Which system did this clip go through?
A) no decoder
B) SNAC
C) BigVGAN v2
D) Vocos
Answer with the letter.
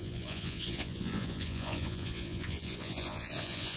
D